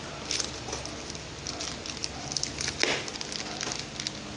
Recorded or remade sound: recorded